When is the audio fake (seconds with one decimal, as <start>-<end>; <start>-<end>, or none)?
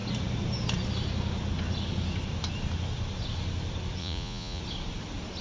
4.0-4.6